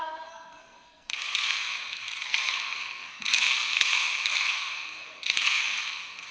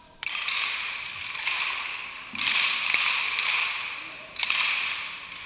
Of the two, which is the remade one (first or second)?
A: first